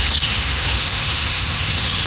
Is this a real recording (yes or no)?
no